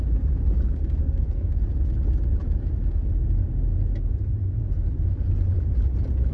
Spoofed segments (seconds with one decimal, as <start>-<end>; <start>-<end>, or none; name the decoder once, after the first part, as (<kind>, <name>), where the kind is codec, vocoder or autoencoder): 1.0-1.6 (codec, SNAC)